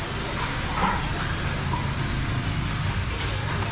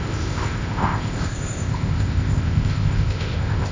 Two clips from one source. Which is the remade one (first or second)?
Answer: second